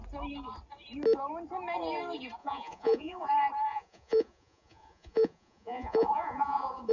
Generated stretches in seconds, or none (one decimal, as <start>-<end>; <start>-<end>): 2.4-3.3; 3.7-6.9